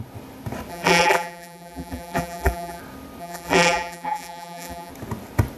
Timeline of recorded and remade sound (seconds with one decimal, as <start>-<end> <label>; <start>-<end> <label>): 0.0-0.7 recorded; 0.7-2.8 remade; 2.8-3.2 recorded; 3.2-4.9 remade; 4.9-5.6 recorded